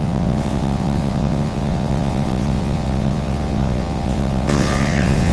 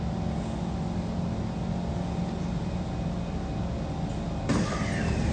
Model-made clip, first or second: first